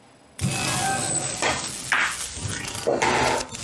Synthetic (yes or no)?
no